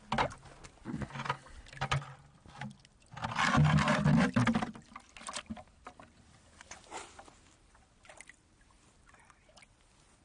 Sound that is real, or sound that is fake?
real